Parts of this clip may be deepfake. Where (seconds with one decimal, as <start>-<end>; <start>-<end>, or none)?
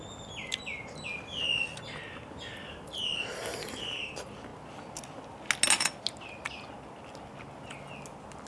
none